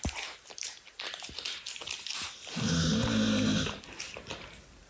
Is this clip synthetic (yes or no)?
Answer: no